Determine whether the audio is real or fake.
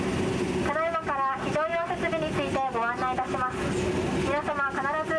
real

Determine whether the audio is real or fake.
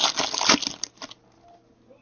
real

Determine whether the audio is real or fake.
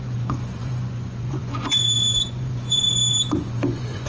fake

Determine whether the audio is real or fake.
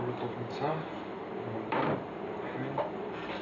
fake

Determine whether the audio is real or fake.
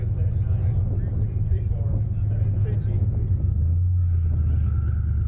real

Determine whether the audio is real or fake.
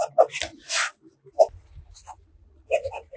fake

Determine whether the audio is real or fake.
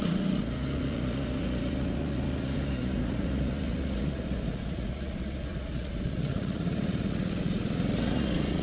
fake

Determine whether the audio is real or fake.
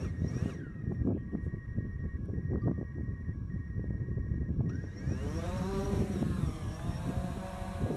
fake